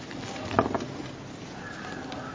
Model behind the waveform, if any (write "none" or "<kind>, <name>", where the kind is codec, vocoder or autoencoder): none